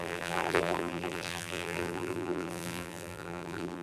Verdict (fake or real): fake